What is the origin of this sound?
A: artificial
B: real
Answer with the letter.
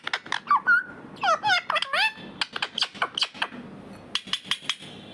B